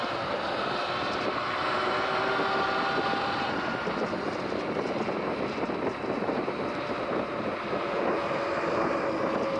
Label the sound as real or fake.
real